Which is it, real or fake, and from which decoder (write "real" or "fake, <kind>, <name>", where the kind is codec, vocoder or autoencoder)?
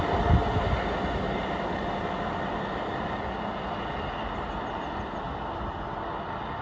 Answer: real